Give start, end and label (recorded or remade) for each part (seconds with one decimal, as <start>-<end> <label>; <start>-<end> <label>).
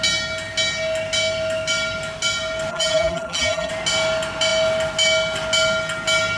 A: 0.0-2.7 recorded; 2.7-3.7 remade; 3.7-6.4 recorded